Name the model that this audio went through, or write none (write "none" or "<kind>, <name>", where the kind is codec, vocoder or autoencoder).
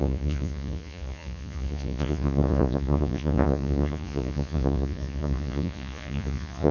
vocoder, Vocos